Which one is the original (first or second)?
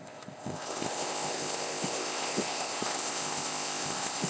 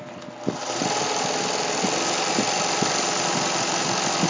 second